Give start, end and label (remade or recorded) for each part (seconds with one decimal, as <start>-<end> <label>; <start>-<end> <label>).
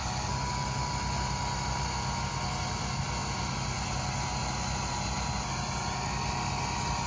0.0-7.1 recorded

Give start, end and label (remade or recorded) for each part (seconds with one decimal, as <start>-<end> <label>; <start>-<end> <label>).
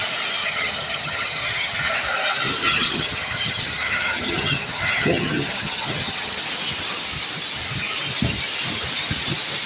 0.0-0.4 recorded; 0.4-2.0 remade; 2.0-2.6 recorded; 2.6-6.4 remade; 6.4-9.7 recorded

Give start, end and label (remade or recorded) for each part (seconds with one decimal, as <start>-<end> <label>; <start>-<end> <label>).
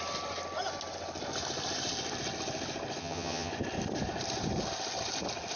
0.0-3.0 recorded; 3.0-3.5 remade; 3.5-5.6 recorded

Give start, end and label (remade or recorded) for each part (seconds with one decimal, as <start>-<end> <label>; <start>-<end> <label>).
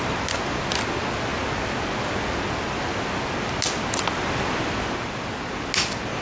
0.0-6.2 recorded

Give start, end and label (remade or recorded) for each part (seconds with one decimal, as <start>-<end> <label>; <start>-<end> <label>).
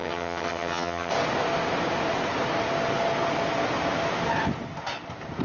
0.0-1.1 remade; 1.1-5.4 recorded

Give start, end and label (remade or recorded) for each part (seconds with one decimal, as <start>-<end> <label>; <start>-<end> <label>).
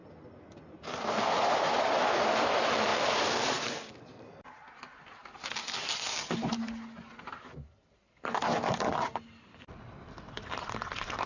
0.0-11.3 recorded